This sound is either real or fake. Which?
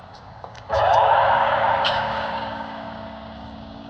fake